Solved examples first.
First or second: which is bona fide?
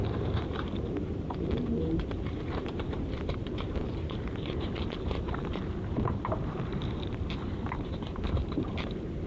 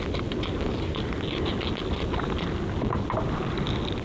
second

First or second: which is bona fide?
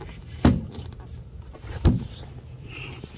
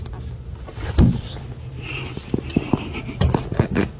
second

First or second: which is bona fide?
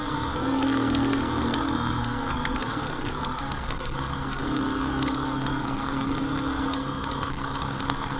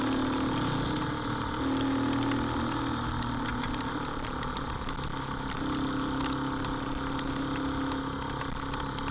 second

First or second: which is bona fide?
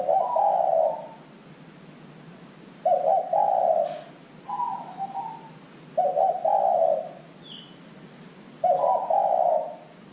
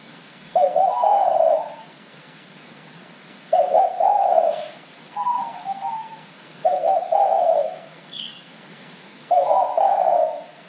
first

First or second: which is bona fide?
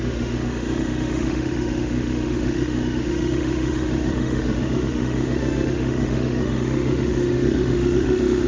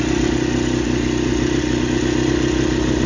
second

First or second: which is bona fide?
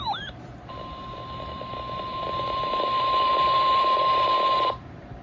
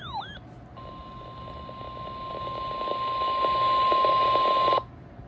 second